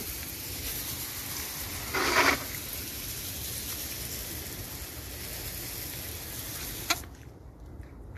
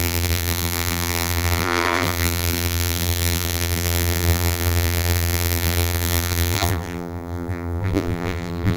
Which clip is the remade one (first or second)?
second